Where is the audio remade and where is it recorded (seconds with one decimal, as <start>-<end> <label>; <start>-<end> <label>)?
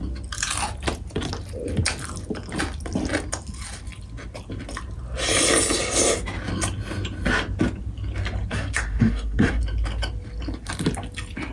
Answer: 0.0-8.5 recorded; 8.5-9.6 remade; 9.6-11.5 recorded